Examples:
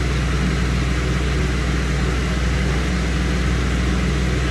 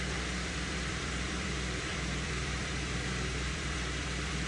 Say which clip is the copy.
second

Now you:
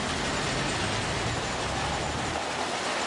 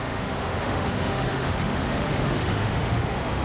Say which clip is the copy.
second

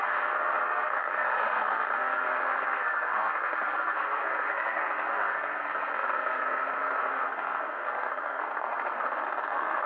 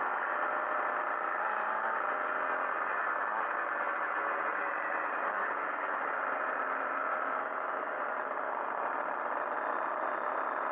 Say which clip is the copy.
first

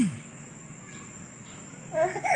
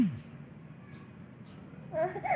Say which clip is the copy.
first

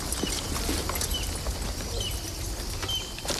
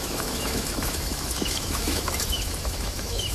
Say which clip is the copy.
second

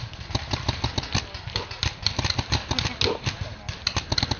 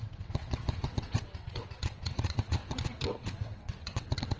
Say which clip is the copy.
second